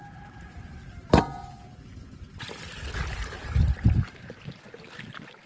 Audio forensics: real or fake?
fake